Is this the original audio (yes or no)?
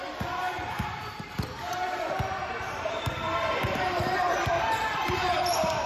no